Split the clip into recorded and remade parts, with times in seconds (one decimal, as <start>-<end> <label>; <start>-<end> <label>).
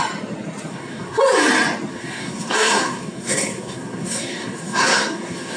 0.0-0.7 recorded; 0.7-1.2 remade; 1.2-1.9 recorded; 1.9-5.6 remade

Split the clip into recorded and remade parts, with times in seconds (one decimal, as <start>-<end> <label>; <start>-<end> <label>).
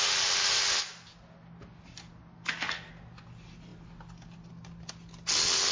0.0-2.3 recorded; 2.3-2.9 remade; 2.9-5.7 recorded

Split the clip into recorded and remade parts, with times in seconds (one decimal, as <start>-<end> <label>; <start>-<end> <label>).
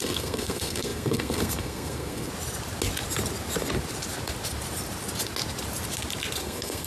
0.0-2.3 remade; 2.3-6.4 recorded; 6.4-6.9 remade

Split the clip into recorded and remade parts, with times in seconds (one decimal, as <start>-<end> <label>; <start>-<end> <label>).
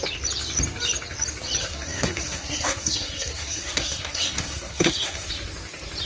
0.0-1.6 recorded; 1.6-5.3 remade; 5.3-6.1 recorded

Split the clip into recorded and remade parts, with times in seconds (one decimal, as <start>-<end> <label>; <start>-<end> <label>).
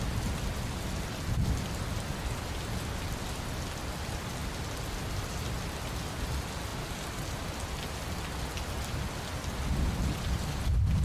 0.0-11.0 recorded